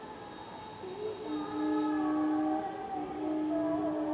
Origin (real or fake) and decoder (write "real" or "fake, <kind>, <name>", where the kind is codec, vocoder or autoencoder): real